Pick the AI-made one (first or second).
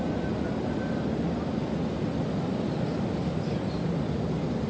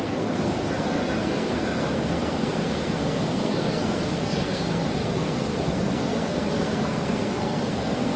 second